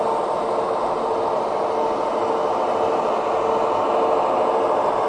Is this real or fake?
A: real